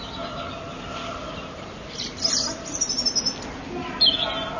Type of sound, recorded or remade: recorded